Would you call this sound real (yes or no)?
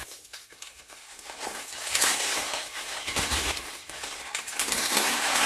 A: no